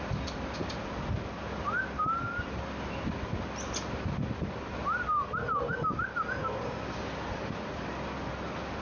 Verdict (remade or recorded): recorded